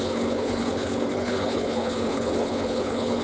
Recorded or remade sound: remade